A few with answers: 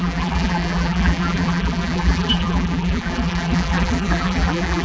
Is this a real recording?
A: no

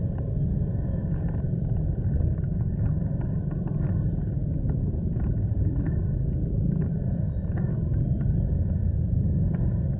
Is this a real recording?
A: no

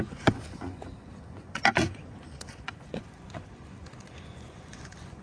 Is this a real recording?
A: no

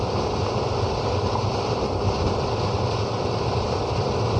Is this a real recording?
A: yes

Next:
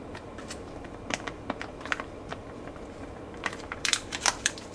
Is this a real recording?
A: no